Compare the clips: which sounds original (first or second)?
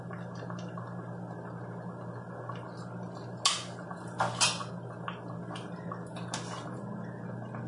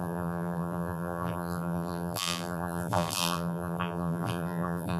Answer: first